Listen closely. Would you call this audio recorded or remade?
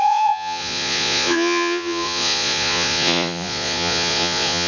remade